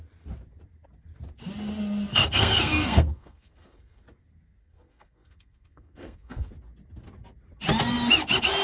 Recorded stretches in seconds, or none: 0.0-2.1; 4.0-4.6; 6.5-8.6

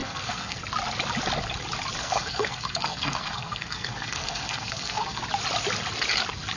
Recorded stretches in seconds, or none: 0.6-2.0; 5.2-6.6